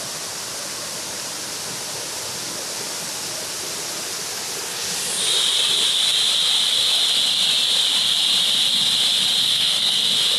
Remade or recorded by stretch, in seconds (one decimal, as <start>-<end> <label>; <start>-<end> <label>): 0.0-9.4 recorded; 9.4-10.0 remade; 10.0-10.4 recorded